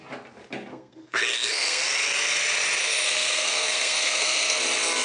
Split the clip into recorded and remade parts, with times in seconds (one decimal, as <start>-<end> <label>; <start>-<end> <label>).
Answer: 0.0-0.7 recorded; 0.7-1.8 remade; 1.8-2.8 recorded; 2.8-4.6 remade; 4.6-5.0 recorded

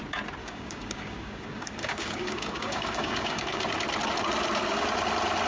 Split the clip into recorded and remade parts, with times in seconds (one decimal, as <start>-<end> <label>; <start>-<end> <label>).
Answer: 0.0-0.4 recorded; 0.4-3.7 remade; 3.7-5.5 recorded

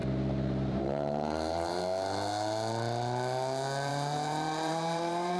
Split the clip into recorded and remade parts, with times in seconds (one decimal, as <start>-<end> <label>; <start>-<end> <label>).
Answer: 0.0-1.8 remade; 1.8-3.9 recorded; 3.9-5.4 remade

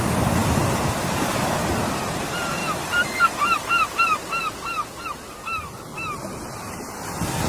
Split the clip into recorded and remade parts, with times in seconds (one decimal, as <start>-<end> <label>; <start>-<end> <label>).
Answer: 0.0-1.6 remade; 1.6-2.2 recorded; 2.2-2.6 remade; 2.6-5.1 recorded; 5.1-5.9 remade; 5.9-6.7 recorded; 6.7-7.5 remade